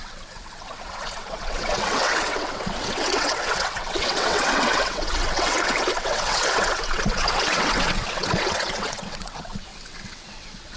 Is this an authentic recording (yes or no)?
no